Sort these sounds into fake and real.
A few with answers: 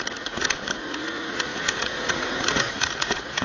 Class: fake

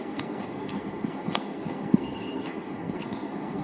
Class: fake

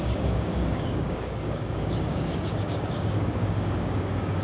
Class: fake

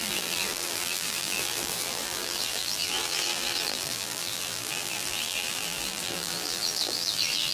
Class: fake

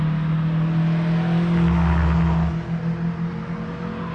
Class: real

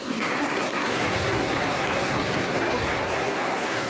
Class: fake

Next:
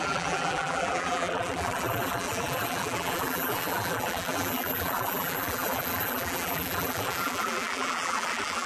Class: fake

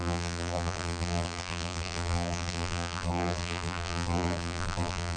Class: fake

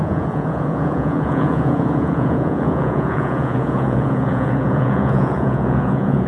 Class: fake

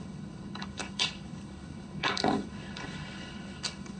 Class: fake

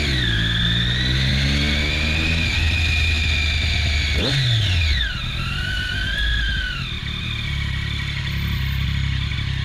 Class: real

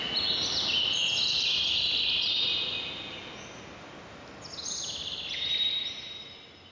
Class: real